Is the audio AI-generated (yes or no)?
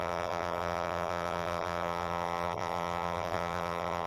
yes